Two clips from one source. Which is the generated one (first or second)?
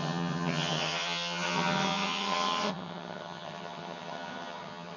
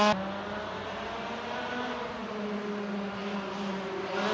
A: first